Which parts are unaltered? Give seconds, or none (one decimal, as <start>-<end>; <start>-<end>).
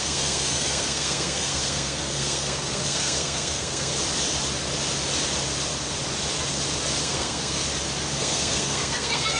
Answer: 3.9-7.0; 7.6-8.1